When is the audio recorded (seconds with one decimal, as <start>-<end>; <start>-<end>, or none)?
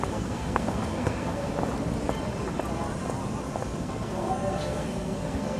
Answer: 1.5-3.8